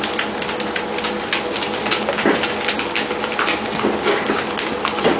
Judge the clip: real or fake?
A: real